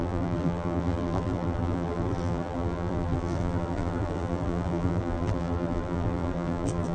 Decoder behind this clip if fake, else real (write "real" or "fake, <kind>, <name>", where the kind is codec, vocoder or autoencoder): fake, vocoder, BigVGAN v2